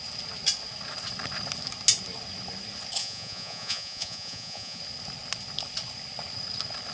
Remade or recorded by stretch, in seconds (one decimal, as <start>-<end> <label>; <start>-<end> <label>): 0.0-3.0 recorded; 3.0-4.8 remade; 4.8-6.9 recorded